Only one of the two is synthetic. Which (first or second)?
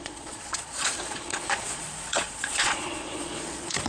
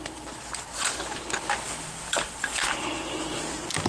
first